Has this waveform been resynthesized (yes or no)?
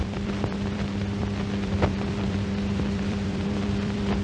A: yes